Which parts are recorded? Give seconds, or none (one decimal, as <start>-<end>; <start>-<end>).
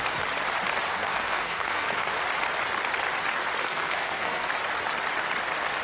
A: 0.0-0.9; 2.1-3.6; 4.5-5.8